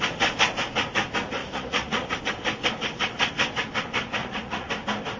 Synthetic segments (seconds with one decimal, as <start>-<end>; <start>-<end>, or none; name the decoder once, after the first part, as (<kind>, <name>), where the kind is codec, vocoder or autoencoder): 1.4-2.2 (vocoder, Vocos); 4.2-4.7